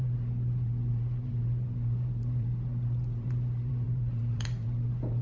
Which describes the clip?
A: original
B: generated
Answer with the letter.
B